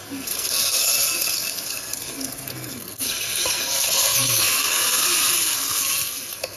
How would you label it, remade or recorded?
remade